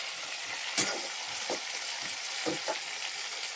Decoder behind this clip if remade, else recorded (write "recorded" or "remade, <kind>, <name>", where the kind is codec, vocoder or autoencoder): recorded